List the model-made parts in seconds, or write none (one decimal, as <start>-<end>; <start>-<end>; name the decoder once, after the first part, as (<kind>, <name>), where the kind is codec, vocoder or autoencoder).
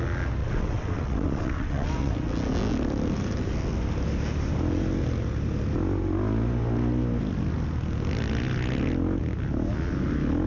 0.4-2.1 (vocoder, WaveNeXt)